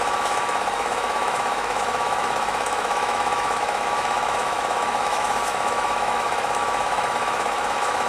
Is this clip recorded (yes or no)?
no